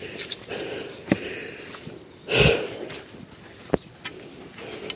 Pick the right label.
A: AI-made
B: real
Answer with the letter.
B